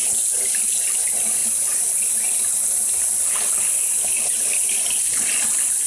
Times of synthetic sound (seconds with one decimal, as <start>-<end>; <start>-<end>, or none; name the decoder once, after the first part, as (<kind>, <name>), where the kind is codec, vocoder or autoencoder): none